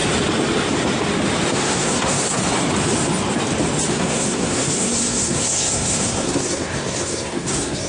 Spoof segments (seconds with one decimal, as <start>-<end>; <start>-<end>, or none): 1.5-2.4; 3.9-7.9